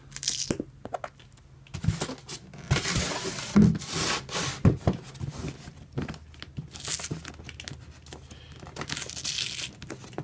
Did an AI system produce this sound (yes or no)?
no